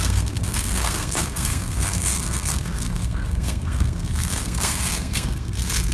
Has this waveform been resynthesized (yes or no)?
yes